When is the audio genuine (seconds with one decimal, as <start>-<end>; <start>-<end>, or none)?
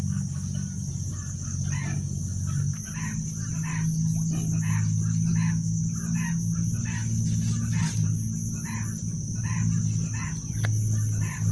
0.0-5.3; 5.8-11.5